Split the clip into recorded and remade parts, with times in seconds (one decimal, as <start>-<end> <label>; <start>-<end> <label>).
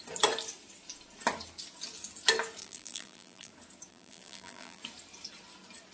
0.0-2.6 recorded; 2.6-3.5 remade; 3.5-3.9 recorded; 3.9-4.8 remade; 4.8-5.9 recorded